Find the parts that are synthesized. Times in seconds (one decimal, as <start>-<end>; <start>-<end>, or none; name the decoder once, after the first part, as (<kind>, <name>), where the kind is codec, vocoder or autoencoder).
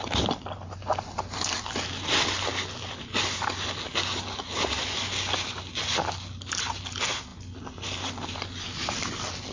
none